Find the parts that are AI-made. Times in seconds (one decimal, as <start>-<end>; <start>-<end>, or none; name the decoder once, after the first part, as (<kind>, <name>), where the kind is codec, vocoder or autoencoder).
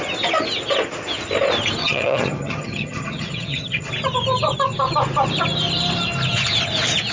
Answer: 1.8-3.9 (vocoder, HiFi-GAN)